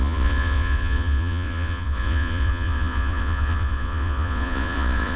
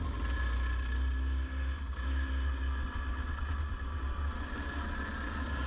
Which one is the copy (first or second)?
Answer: first